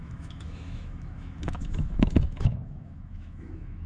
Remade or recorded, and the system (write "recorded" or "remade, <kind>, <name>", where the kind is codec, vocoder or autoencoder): remade, autoencoder, DAC-VAE